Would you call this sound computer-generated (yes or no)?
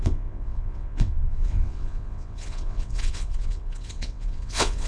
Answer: yes